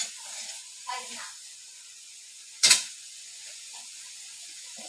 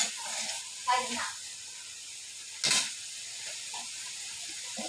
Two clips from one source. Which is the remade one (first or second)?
first